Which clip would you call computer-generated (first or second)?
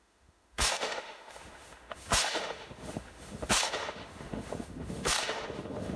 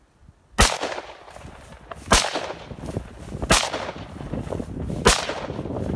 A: first